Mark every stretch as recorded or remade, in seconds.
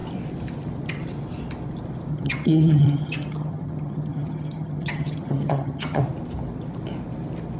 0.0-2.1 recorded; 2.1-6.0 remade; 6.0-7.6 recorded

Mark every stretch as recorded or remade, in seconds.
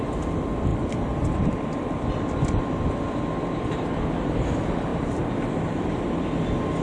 0.0-0.7 recorded; 0.7-2.0 remade; 2.0-4.9 recorded; 4.9-5.9 remade; 5.9-6.8 recorded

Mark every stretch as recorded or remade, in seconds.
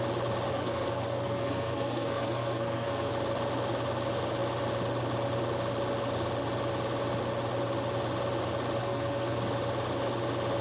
0.0-0.5 recorded; 0.5-3.1 remade; 3.1-8.8 recorded; 8.8-9.4 remade; 9.4-10.6 recorded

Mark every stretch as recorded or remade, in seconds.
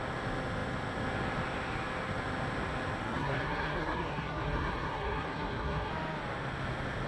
0.0-3.0 recorded; 3.0-5.9 remade; 5.9-7.1 recorded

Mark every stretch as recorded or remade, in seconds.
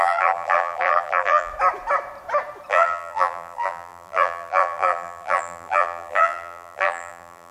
0.0-1.5 remade; 1.5-2.7 recorded; 2.7-7.5 remade